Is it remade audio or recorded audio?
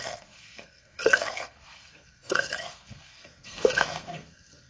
remade